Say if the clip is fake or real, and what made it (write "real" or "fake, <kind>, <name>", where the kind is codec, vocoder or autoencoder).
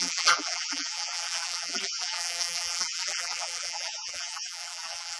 fake, vocoder, BigVGAN v2